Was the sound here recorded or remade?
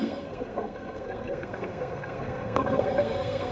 remade